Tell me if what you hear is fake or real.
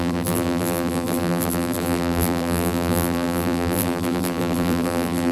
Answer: fake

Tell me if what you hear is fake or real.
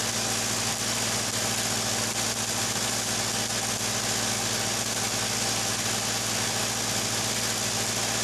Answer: real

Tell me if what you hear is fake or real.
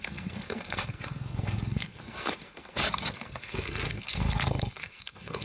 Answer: fake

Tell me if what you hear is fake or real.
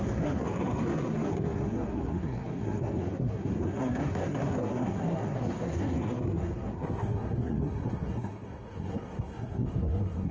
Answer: fake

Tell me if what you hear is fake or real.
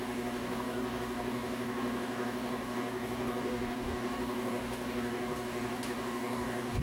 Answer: fake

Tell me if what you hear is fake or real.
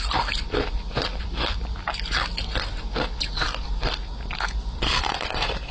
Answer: real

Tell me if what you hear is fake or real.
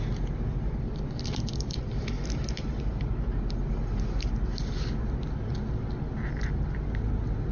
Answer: real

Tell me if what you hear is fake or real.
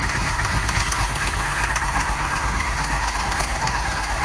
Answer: fake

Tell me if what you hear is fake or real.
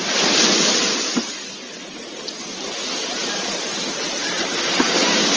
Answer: real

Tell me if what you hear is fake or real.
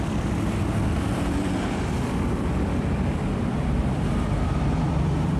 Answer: fake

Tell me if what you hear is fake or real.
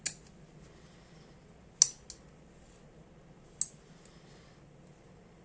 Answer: real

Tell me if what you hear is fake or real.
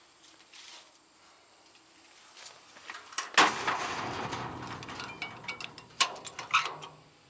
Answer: real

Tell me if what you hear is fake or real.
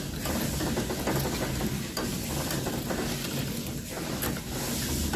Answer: real